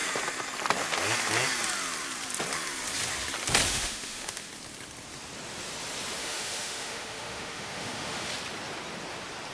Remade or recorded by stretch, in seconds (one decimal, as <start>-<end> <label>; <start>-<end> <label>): 0.0-3.7 recorded; 3.7-4.5 remade; 4.5-6.2 recorded; 6.2-8.3 remade; 8.3-9.5 recorded